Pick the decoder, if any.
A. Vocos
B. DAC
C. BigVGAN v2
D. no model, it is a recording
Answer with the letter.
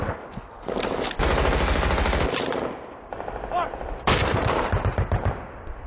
D